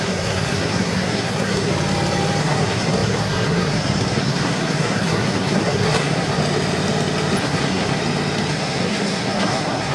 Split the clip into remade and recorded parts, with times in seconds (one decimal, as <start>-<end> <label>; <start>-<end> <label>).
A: 0.0-1.7 remade; 1.7-2.4 recorded; 2.4-6.4 remade; 6.4-7.4 recorded; 7.4-8.0 remade; 8.0-8.5 recorded; 8.5-9.9 remade